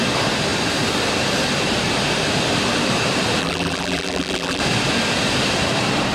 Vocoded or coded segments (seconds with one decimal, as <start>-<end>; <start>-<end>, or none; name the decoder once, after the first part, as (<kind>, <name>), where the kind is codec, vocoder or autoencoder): 3.4-4.6 (vocoder, BigVGAN v2)